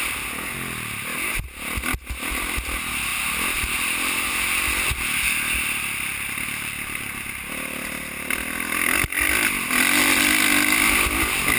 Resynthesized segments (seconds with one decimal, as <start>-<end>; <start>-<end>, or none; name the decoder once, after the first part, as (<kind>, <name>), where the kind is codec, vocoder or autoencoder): 3.1-4.3 (vocoder, BigVGAN v2)